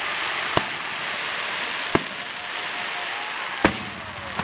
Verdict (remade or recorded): recorded